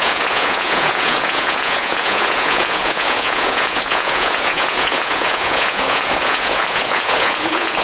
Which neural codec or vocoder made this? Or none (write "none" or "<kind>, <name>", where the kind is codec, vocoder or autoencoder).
vocoder, Vocos